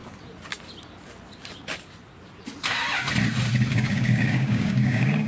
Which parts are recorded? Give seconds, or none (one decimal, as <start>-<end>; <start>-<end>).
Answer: 0.0-3.7